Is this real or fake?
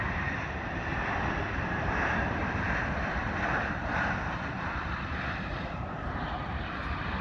fake